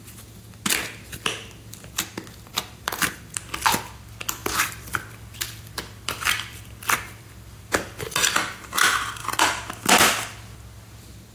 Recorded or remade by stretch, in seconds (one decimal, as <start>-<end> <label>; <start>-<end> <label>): 0.0-2.5 recorded; 2.5-3.2 remade; 3.2-4.4 recorded; 4.4-8.0 remade; 8.0-11.3 recorded